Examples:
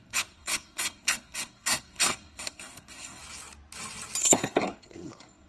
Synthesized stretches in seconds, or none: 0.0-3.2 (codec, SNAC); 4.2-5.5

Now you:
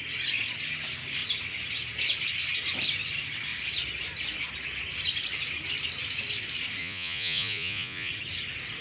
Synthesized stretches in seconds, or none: 6.8-8.1 (vocoder, Vocos)

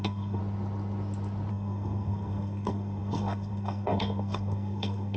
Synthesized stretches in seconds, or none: 0.0-0.4 (codec, SNAC); 1.5-5.2

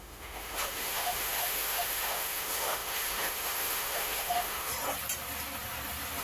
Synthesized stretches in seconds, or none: 0.0-4.7 (autoencoder, DAC-VAE)

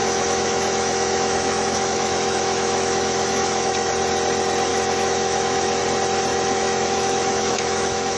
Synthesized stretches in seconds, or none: 0.0-3.9 (autoencoder, DAC-VAE); 4.7-5.8; 6.3-8.2

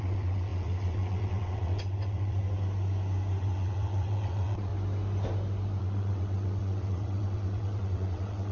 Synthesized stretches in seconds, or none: 0.0-2.4 (vocoder, WaveNeXt); 3.4-4.7; 5.8-8.5

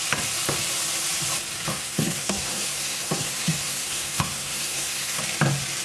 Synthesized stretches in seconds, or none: 1.7-5.2 (codec, SNAC)

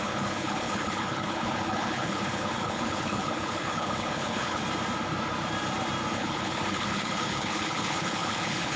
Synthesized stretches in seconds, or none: 0.0-4.6 (codec, HILCodec); 6.1-8.8